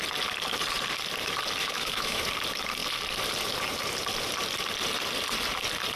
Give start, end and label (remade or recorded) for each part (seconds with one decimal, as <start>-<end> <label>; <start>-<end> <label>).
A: 0.0-1.6 recorded; 1.6-2.2 remade; 2.2-6.0 recorded

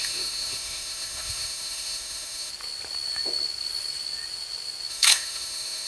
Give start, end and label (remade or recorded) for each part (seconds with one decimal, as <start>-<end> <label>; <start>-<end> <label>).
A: 0.0-2.5 remade; 2.5-4.9 recorded; 4.9-5.9 remade

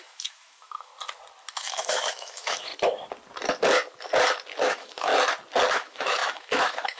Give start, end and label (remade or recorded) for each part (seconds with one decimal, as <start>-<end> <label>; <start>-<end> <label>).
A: 0.0-0.9 remade; 0.9-1.5 recorded; 1.5-2.7 remade; 2.7-4.6 recorded; 4.6-5.1 remade; 5.1-5.7 recorded; 5.7-7.0 remade

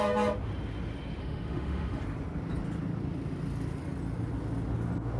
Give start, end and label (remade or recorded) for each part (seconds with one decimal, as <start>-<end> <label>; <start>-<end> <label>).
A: 0.0-1.2 recorded; 1.2-2.0 remade; 2.0-5.2 recorded

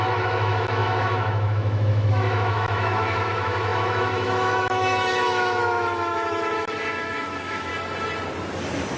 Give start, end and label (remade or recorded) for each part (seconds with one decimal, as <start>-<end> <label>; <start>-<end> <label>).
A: 0.0-7.7 remade; 7.7-9.0 recorded

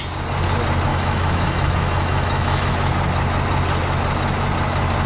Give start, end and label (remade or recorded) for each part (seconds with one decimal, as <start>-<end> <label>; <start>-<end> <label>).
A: 0.0-0.9 recorded; 0.9-2.7 remade; 2.7-5.1 recorded